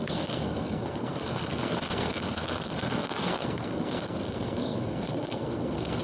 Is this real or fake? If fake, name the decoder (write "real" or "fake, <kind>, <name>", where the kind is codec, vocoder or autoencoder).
fake, codec, SNAC